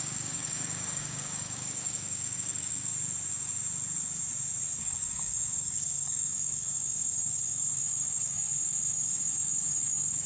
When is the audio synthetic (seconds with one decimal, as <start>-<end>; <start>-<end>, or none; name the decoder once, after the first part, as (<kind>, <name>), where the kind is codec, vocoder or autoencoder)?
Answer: 0.0-2.9 (codec, DAC); 4.8-10.3